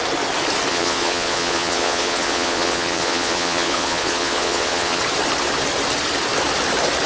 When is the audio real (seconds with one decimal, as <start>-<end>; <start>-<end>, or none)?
0.0-0.7; 5.0-7.1